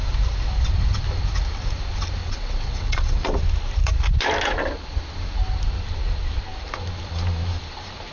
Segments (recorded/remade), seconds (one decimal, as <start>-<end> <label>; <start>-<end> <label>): 0.0-2.2 recorded; 2.2-3.4 remade; 3.4-8.1 recorded